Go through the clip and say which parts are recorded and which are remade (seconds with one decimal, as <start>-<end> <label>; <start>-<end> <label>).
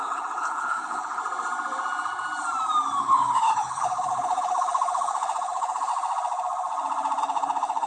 0.0-1.2 remade; 1.2-3.0 recorded; 3.0-5.9 remade; 5.9-7.2 recorded; 7.2-7.9 remade